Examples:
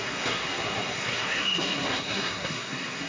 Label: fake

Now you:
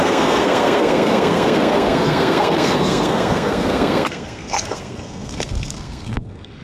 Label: fake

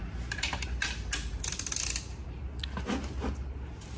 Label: real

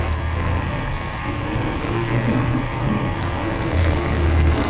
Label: fake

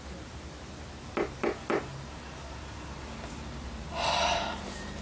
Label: real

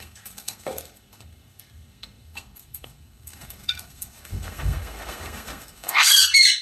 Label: fake